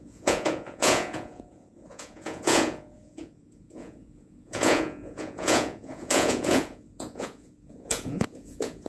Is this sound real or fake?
fake